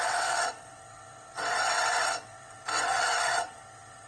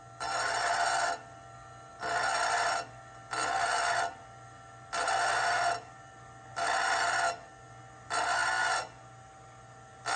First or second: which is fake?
first